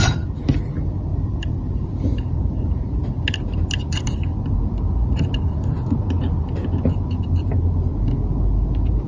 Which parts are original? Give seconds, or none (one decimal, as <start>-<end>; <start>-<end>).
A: 0.0-1.1; 1.8-9.1